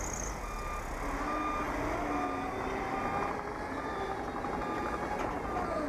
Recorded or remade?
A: recorded